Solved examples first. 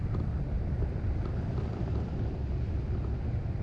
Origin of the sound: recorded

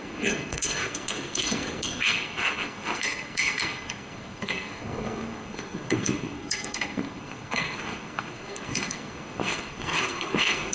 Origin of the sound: remade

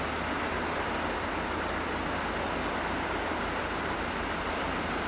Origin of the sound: recorded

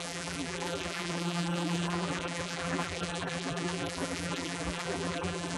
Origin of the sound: remade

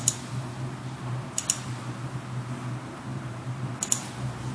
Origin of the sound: recorded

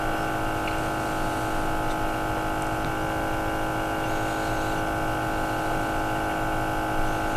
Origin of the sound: recorded